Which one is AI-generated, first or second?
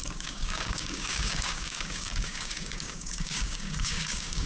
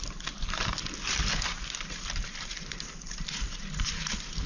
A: first